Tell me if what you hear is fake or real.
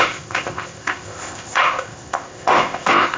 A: fake